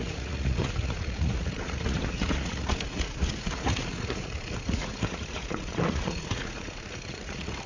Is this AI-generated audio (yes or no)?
yes